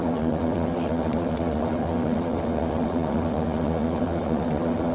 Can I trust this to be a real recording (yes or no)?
no